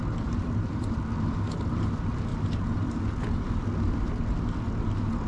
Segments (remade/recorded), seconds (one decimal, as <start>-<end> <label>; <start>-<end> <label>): 0.0-5.3 recorded